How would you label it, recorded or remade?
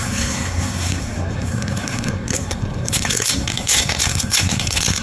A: remade